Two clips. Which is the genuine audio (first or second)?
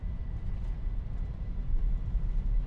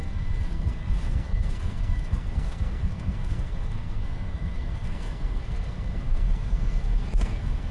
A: first